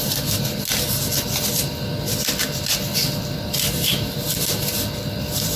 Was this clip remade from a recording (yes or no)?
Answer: no